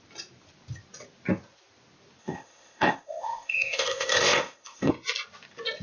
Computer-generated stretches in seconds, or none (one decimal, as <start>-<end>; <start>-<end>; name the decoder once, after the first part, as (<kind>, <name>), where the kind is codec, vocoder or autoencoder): 2.2-4.9 (codec, ZipCodec)